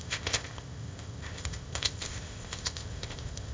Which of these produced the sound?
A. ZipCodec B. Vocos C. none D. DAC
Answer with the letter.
A